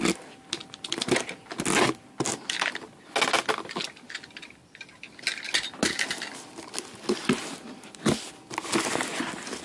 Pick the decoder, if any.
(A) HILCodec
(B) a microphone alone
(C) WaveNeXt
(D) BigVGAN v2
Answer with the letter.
B